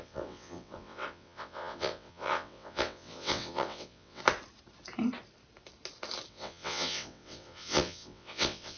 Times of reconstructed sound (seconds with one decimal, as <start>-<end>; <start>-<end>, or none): 0.0-4.2; 6.3-8.8